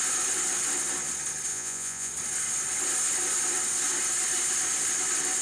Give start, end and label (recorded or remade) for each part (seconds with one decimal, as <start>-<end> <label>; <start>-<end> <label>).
0.0-1.5 recorded; 1.5-2.1 remade; 2.1-5.4 recorded